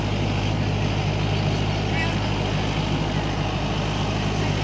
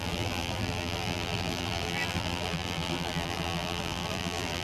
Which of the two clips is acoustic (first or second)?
first